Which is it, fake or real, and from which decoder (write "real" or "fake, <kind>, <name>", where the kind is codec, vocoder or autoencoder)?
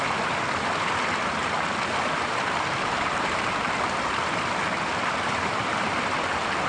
real